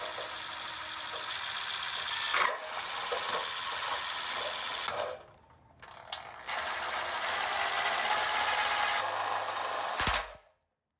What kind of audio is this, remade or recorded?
recorded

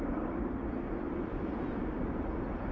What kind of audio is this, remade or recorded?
recorded